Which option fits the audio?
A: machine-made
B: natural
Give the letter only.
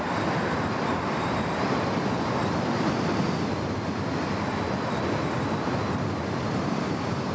A